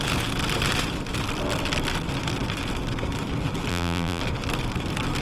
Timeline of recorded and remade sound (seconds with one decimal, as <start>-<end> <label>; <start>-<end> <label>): 0.0-3.7 recorded; 3.7-4.2 remade; 4.2-5.2 recorded